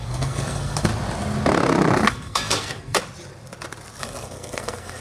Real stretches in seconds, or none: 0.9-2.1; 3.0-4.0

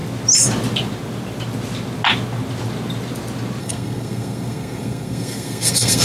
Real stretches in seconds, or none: 0.0-3.6